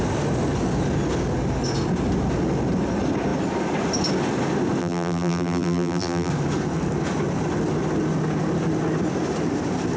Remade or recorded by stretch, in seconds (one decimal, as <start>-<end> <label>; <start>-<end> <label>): 0.0-4.8 recorded; 4.8-6.3 remade; 6.3-10.0 recorded